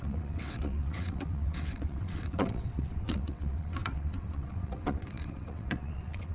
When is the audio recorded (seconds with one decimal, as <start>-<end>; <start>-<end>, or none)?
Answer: none